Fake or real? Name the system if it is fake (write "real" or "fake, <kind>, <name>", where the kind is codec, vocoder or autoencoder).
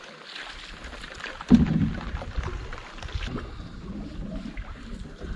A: real